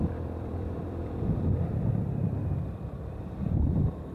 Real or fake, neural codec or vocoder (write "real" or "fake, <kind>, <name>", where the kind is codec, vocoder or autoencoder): fake, vocoder, BigVGAN v2